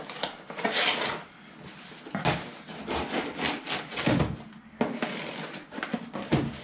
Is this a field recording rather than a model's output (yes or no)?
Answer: yes